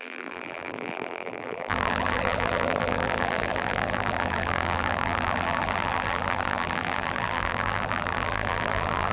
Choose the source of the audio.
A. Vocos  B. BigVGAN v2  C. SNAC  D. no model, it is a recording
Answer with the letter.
B